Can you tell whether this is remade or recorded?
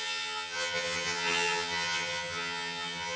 remade